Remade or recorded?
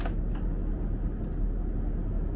recorded